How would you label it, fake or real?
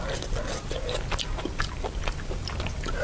real